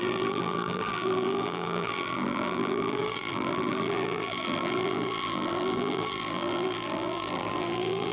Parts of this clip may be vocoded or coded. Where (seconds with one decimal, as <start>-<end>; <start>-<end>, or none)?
0.0-8.1